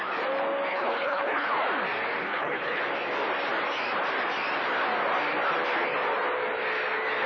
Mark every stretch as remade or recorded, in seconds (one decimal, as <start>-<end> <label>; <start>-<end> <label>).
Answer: 0.0-0.7 recorded; 0.7-1.5 remade; 1.5-2.2 recorded; 2.2-2.8 remade; 2.8-7.3 recorded